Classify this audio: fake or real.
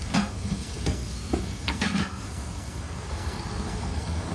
fake